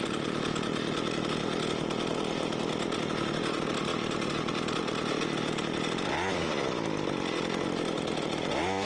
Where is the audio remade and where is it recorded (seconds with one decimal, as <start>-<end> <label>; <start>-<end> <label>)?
0.0-8.9 recorded